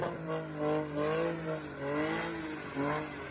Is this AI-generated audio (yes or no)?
no